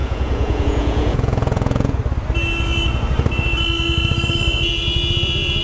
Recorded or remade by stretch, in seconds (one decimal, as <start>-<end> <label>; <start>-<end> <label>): 0.0-2.0 remade; 2.0-5.6 recorded